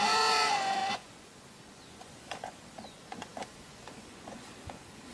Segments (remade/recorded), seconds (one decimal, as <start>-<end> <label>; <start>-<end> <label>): 0.0-5.1 remade